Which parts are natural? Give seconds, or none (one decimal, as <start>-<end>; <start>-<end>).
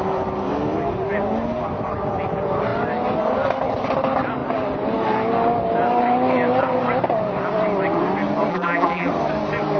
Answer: 0.0-8.5; 9.1-9.8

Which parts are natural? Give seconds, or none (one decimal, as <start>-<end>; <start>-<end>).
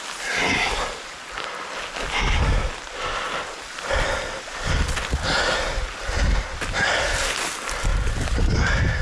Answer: 0.0-7.9; 8.6-9.0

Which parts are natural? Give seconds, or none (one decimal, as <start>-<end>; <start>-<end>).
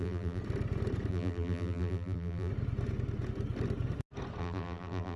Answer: 0.4-1.1; 2.5-4.4